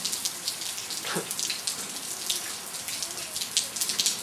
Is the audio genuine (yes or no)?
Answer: yes